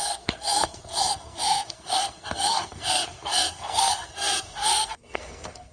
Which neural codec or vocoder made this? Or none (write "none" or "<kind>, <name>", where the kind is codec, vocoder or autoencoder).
codec, SNAC